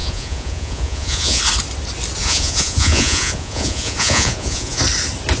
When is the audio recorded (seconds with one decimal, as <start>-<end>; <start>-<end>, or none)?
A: 1.4-2.2; 4.8-5.4